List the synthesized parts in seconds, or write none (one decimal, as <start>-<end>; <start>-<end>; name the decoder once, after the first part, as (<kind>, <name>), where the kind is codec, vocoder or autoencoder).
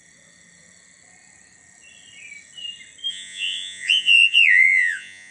3.1-5.3 (vocoder, Vocos)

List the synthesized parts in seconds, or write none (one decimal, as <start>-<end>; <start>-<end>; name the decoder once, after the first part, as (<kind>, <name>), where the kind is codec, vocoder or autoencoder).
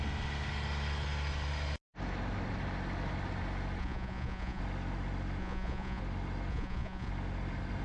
3.8-4.6 (vocoder, Vocos); 5.4-6.0; 6.5-7.1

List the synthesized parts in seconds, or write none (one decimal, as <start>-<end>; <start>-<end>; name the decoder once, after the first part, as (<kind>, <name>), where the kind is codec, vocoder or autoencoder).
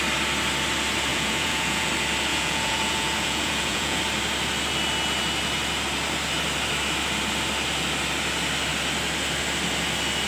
1.1-1.9 (vocoder, Vocos); 2.3-4.0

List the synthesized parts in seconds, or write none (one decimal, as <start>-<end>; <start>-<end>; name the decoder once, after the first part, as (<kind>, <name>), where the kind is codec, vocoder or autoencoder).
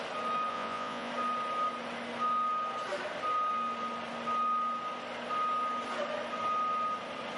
0.5-1.1 (vocoder, Vocos)